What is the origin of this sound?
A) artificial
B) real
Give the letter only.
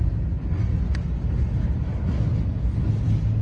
B